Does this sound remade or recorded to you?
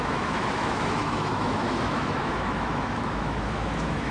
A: remade